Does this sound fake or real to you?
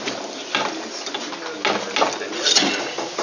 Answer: real